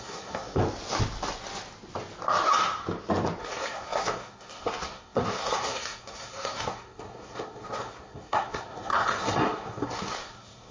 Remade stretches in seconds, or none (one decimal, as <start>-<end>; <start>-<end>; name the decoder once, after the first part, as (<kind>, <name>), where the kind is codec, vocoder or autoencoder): 0.0-0.6 (codec, SNAC); 3.4-10.7